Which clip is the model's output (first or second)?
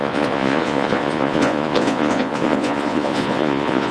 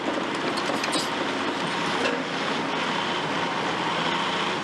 first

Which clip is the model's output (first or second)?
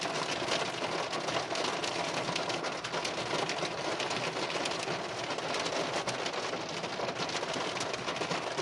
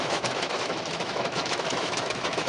second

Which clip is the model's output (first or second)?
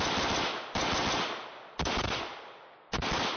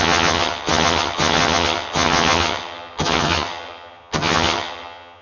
second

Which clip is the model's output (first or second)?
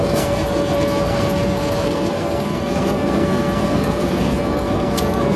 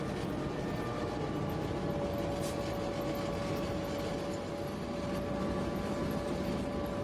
first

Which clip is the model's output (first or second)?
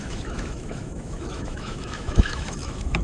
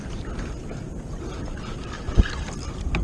first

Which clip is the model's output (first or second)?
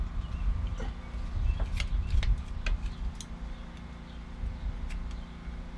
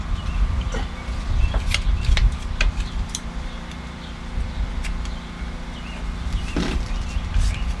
second